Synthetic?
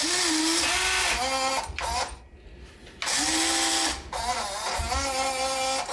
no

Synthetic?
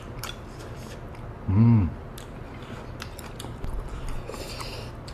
no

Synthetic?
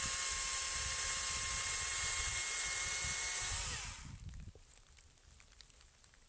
no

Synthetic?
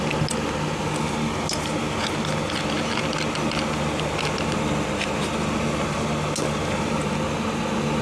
no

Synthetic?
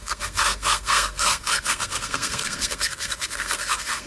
yes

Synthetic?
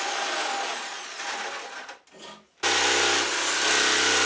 no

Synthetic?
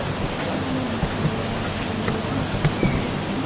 no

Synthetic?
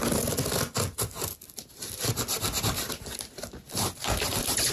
no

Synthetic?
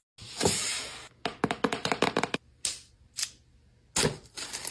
no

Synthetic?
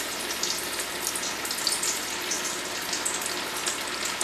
no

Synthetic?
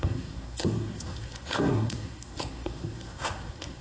yes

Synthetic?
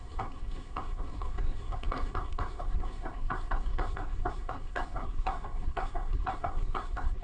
yes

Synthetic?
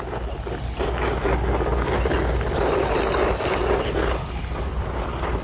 no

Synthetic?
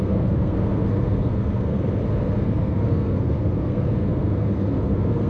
yes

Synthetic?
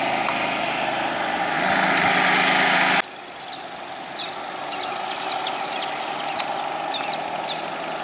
no